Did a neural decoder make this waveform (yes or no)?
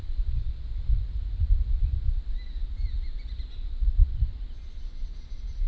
no